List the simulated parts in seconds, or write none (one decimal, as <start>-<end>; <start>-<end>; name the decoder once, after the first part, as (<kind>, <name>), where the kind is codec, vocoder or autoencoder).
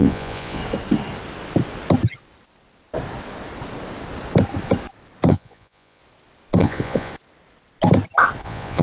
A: 0.0-0.6 (vocoder, Vocos); 5.3-6.0; 6.6-7.1; 8.4-8.8